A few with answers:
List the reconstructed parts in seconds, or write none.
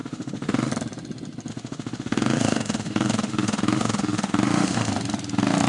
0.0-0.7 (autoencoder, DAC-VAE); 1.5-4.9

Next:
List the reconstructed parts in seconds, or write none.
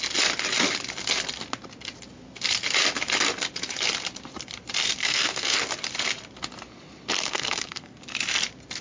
5.0-5.6 (codec, SNAC); 7.2-8.0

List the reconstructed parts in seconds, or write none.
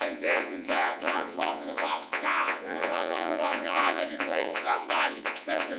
0.0-5.8 (vocoder, Vocos)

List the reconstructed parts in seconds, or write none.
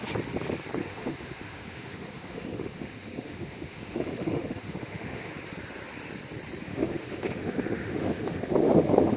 0.8-5.3 (autoencoder, DAC-VAE); 6.7-9.2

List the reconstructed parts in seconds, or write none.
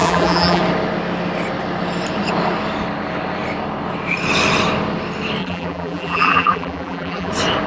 0.0-0.6 (vocoder, BigVGAN v2); 5.4-7.3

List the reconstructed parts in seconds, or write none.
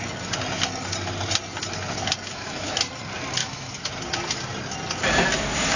2.3-2.9 (autoencoder, DAC-VAE); 3.4-3.9